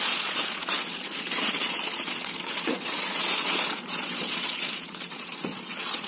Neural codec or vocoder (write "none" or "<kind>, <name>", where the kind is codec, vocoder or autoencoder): vocoder, Vocos